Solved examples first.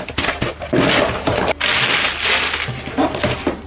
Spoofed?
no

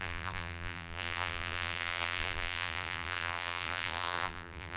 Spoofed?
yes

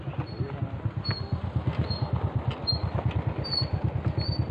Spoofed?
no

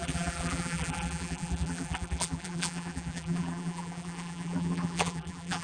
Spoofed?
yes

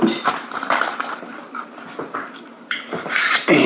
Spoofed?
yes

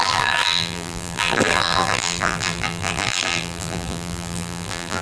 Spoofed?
yes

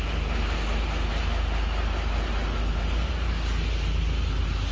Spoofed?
no